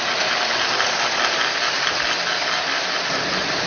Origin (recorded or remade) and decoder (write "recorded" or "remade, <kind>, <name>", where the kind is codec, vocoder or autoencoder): recorded